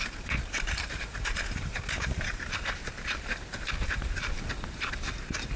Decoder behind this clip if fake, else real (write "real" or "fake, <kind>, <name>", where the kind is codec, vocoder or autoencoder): fake, vocoder, BigVGAN v2